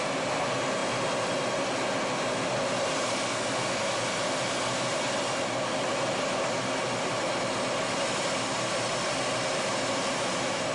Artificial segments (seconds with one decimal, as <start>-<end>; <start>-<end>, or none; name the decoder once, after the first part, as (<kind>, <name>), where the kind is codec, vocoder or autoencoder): none